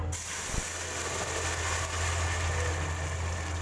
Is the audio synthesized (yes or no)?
no